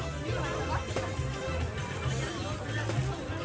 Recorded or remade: recorded